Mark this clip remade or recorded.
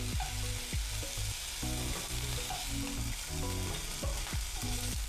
recorded